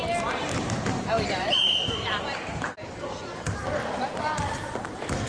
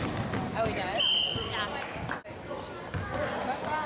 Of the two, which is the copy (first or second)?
first